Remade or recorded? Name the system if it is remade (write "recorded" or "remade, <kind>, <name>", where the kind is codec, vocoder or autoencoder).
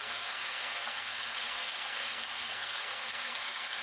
remade, codec, SNAC